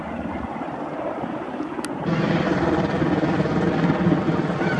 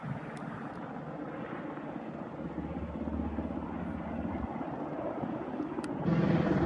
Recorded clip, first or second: second